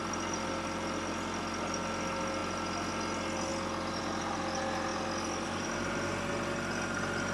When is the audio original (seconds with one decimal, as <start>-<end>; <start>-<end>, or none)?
0.0-7.3